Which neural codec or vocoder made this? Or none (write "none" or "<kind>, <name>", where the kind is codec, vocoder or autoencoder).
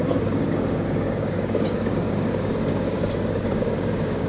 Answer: codec, DAC